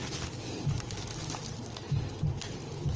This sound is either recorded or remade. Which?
remade